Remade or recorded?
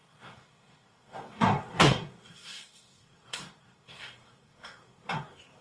remade